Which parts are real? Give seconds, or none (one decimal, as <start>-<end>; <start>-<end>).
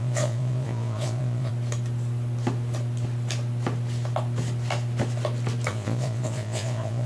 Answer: 1.5-5.7